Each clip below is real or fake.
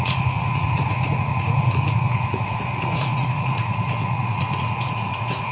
fake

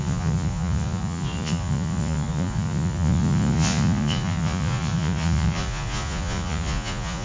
fake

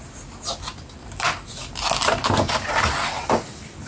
real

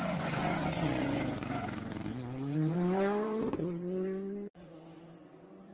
fake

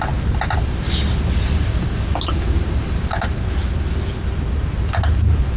real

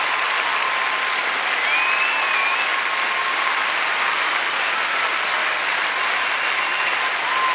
real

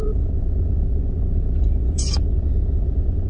fake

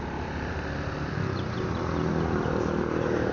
real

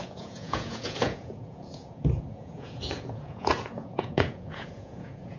fake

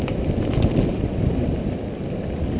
real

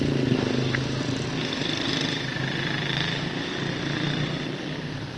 real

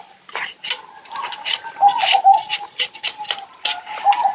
real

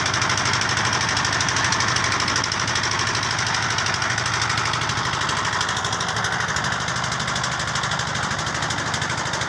real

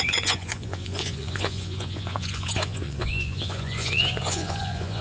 fake